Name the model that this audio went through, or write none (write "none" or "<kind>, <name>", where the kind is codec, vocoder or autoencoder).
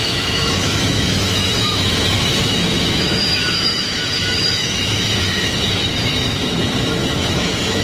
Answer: autoencoder, DAC-VAE